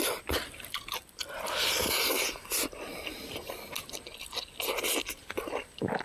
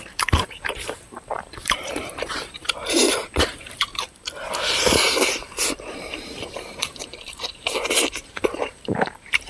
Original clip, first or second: first